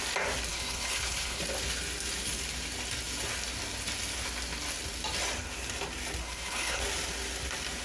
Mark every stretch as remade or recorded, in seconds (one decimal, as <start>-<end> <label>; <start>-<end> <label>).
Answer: 0.0-0.5 recorded; 0.5-1.4 remade; 1.4-6.2 recorded; 6.2-6.8 remade; 6.8-7.8 recorded